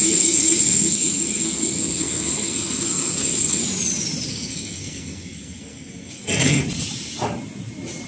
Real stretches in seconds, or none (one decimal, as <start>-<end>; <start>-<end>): 3.6-4.3; 6.6-8.1